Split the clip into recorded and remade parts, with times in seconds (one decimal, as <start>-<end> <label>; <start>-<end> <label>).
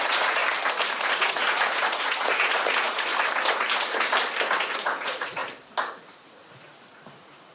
0.0-0.4 remade; 0.4-1.1 recorded; 1.1-3.1 remade; 3.1-4.6 recorded; 4.6-5.4 remade; 5.4-6.0 recorded; 6.0-7.5 remade